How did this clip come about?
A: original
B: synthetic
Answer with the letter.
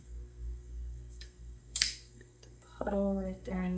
B